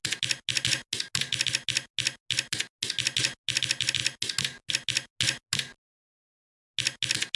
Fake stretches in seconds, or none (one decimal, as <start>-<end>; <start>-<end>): none